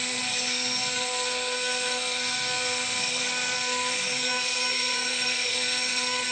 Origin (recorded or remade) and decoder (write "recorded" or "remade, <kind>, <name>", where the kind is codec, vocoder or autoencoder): remade, codec, SNAC